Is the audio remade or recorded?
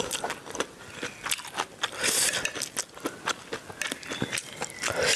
recorded